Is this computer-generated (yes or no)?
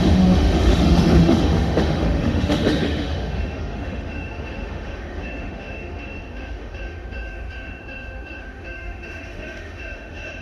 yes